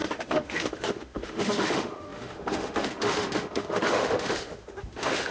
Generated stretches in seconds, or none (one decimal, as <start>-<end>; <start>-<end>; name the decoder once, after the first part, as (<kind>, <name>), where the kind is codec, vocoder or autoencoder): 0.0-5.3 (autoencoder, DAC-VAE)